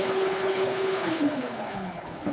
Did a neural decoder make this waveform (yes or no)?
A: yes